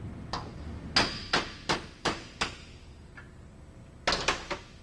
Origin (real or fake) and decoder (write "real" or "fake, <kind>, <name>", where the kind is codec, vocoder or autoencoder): real